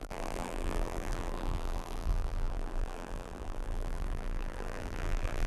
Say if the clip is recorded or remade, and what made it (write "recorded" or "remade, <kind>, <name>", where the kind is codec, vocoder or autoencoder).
remade, vocoder, BigVGAN v2